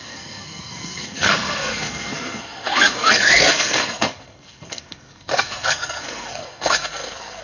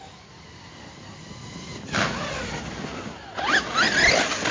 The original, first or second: second